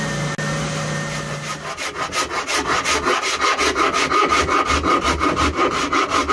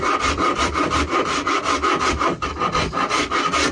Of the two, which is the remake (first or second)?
second